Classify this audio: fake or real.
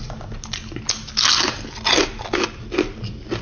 real